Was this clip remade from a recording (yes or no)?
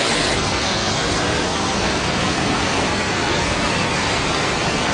yes